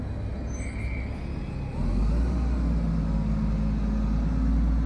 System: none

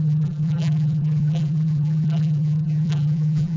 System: vocoder, BigVGAN v2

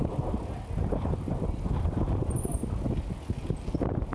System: none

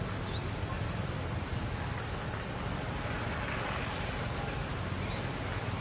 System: none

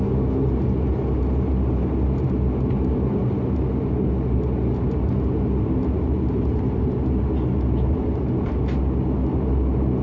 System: none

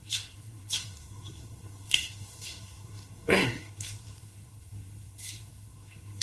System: codec, SNAC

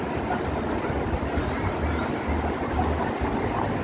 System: none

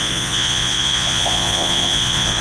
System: vocoder, Vocos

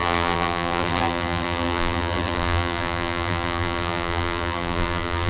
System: vocoder, BigVGAN v2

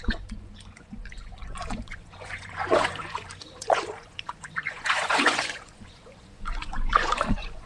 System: vocoder, Vocos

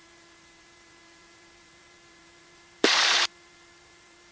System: vocoder, BigVGAN v2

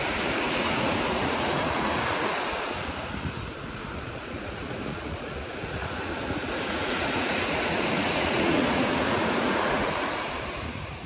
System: vocoder, Vocos